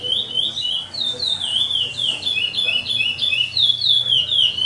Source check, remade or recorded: recorded